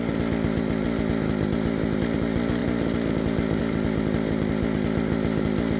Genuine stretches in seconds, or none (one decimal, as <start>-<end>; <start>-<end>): 0.0-5.8